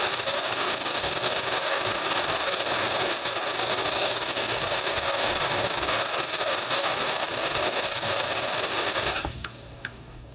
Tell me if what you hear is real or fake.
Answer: fake